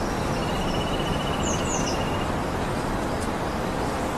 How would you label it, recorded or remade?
recorded